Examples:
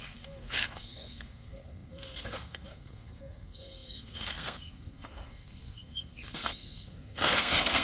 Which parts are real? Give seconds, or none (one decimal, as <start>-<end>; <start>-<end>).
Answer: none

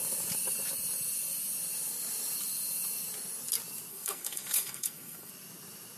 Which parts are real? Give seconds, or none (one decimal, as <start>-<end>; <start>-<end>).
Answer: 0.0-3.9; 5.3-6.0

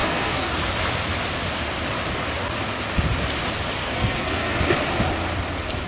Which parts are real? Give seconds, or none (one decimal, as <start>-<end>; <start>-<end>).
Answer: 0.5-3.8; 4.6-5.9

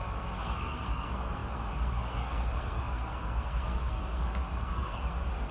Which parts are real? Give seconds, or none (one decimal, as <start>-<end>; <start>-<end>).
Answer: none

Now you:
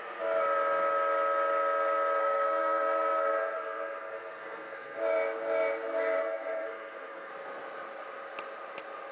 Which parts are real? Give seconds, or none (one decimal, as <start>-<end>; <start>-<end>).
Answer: 0.0-2.2; 5.0-6.2; 7.3-9.1

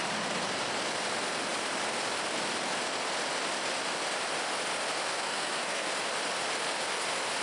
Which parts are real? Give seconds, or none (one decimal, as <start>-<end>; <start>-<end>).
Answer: 0.0-5.1; 5.9-7.4

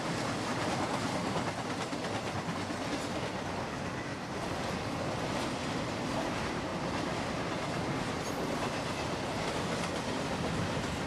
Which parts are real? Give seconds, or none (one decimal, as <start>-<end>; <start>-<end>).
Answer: 0.0-11.1